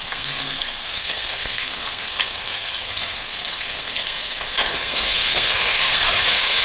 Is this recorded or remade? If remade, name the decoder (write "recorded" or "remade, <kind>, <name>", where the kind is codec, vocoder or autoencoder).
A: remade, codec, SNAC